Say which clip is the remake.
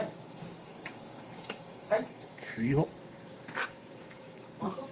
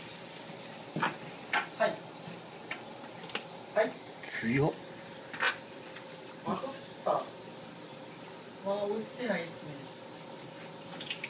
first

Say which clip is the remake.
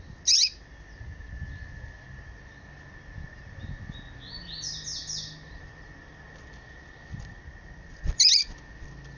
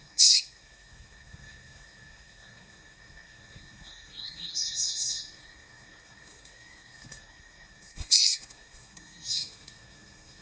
second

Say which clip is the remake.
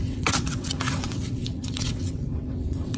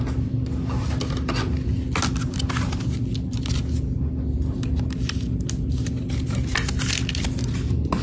first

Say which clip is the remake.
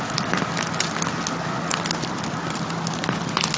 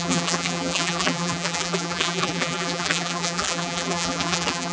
second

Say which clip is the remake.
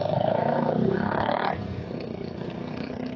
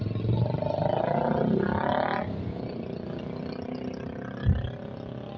first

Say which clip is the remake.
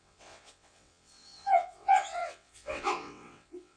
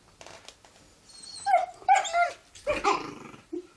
first